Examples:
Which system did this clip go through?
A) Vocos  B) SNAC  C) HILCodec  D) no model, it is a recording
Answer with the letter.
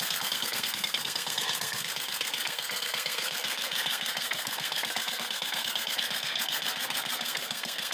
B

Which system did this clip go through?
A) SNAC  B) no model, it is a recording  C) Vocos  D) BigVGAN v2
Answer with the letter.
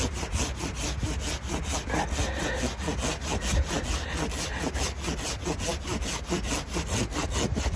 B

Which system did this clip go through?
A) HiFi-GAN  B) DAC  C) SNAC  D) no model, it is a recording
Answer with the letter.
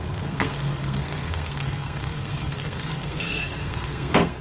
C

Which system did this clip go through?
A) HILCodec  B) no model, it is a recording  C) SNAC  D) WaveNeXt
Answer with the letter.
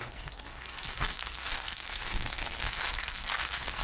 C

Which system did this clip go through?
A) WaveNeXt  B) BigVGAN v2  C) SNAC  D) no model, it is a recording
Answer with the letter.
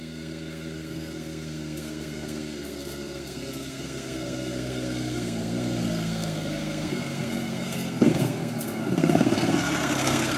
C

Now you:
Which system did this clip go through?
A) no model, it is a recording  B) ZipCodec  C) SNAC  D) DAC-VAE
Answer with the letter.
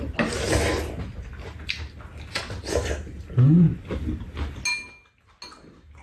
A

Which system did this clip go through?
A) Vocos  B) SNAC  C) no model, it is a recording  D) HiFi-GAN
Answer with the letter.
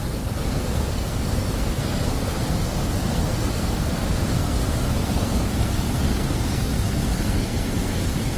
B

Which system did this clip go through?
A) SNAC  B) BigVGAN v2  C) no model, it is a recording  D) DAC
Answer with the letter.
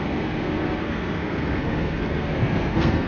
A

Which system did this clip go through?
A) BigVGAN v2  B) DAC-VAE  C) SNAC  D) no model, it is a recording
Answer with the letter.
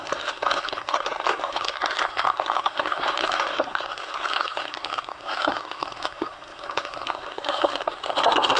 C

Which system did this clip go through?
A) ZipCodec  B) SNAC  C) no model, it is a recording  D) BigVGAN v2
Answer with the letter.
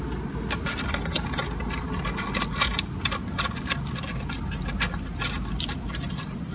C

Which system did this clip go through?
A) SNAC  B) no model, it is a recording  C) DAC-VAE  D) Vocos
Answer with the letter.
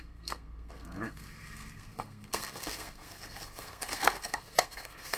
A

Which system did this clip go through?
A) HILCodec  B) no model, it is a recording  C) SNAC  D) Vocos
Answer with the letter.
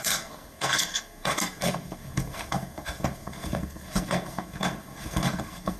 C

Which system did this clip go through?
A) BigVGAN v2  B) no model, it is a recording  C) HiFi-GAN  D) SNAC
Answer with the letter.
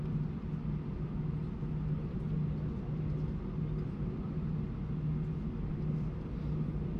B